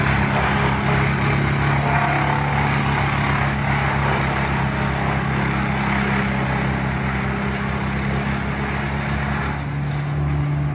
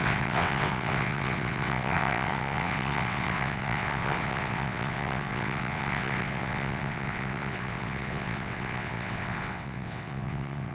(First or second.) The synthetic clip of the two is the second